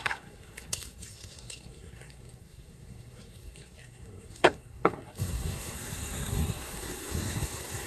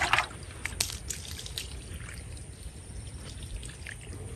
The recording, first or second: second